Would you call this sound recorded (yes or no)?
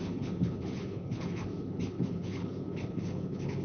no